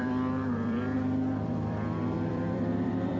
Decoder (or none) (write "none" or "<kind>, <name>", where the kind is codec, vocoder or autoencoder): vocoder, BigVGAN v2